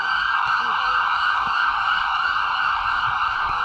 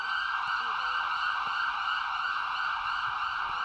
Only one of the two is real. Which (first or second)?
second